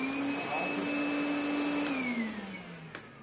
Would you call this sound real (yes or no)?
yes